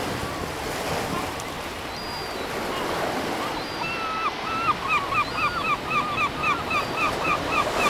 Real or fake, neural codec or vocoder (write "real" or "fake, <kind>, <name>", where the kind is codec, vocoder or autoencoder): real